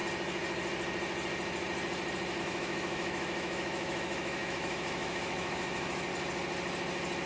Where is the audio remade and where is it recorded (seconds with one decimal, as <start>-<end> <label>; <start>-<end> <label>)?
0.0-2.4 recorded; 2.4-6.1 remade; 6.1-7.3 recorded